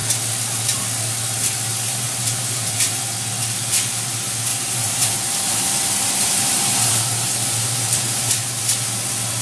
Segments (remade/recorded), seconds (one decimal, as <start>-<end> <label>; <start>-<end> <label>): 0.0-1.9 recorded; 1.9-3.0 remade; 3.0-4.5 recorded; 4.5-8.6 remade; 8.6-9.4 recorded